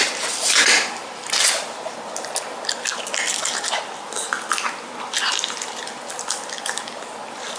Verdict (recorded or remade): recorded